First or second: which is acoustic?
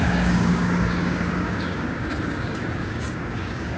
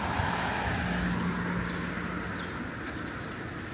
second